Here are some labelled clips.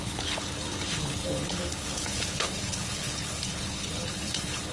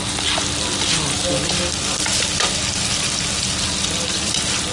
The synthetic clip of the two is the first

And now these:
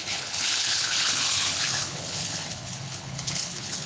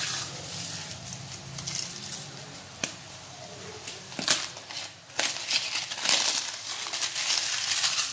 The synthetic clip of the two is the first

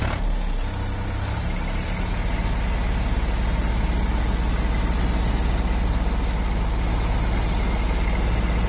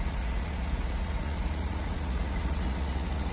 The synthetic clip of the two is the second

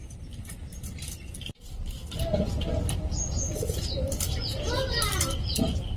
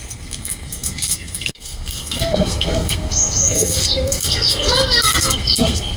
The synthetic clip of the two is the second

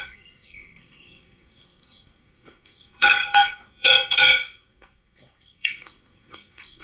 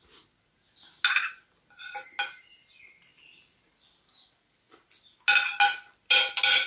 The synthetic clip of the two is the first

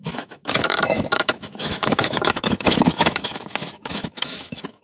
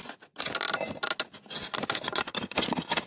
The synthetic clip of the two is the first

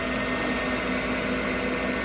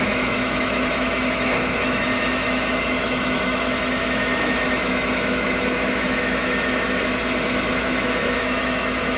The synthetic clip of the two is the second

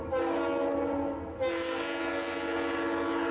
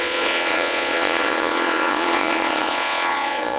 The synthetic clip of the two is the second